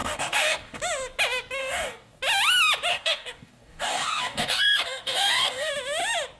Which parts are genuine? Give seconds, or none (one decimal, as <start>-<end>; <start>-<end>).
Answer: 0.8-1.6; 2.2-2.9; 5.7-6.4